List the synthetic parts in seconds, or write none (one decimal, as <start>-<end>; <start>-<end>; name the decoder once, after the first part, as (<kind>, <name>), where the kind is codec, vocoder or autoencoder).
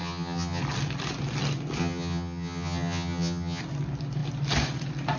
0.0-0.6 (vocoder, HiFi-GAN); 1.8-3.6